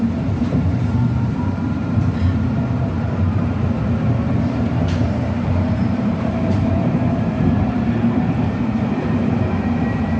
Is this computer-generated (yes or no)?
yes